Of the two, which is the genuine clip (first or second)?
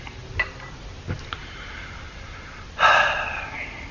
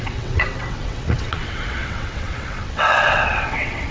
first